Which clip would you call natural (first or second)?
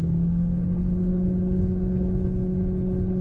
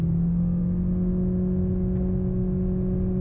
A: second